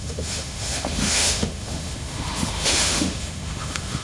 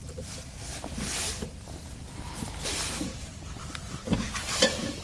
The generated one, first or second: first